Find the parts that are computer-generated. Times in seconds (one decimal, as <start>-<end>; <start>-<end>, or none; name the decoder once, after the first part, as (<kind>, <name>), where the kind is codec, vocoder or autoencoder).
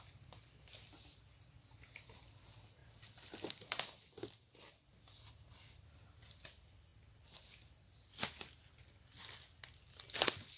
none